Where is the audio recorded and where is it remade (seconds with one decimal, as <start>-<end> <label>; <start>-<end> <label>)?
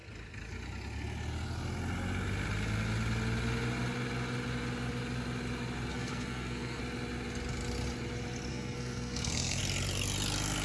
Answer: 0.0-5.9 recorded; 5.9-6.8 remade; 6.8-8.5 recorded; 8.5-9.6 remade; 9.6-10.6 recorded